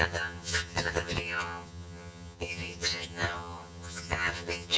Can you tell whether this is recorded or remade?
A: remade